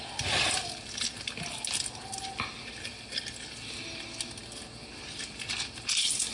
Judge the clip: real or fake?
real